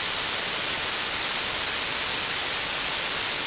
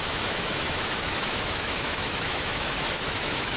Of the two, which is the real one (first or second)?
first